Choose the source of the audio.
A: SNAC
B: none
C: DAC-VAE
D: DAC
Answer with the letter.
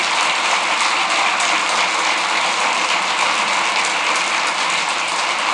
B